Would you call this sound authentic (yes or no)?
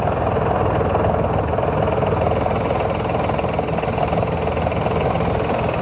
yes